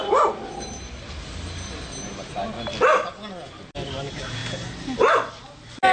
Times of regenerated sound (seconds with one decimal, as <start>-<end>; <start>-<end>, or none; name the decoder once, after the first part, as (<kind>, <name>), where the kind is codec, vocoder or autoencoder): none